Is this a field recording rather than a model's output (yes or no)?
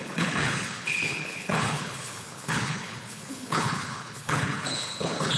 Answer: no